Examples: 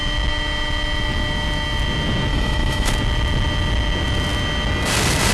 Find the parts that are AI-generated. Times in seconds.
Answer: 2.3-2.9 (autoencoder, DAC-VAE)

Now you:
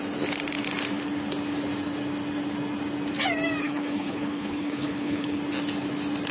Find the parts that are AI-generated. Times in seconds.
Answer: 3.6-5.4 (codec, HILCodec)

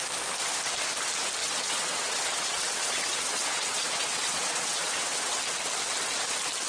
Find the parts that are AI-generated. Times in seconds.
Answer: 1.4-5.4 (vocoder, WaveNeXt)